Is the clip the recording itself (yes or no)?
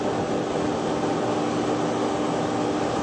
yes